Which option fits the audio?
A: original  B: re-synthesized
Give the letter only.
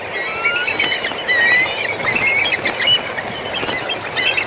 A